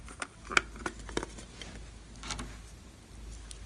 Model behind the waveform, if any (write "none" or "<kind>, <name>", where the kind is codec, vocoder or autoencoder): none